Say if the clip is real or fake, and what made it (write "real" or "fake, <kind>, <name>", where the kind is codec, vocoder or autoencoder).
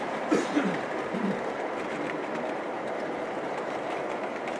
fake, vocoder, BigVGAN v2